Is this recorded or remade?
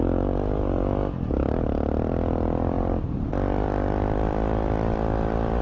recorded